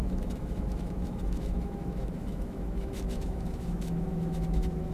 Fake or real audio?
fake